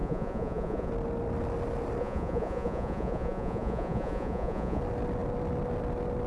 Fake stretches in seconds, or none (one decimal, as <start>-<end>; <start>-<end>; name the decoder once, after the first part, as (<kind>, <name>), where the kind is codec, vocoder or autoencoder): 0.0-0.9 (vocoder, Vocos); 2.0-4.8